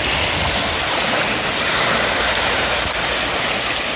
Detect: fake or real real